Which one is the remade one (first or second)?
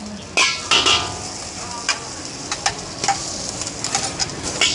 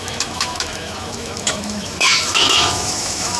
second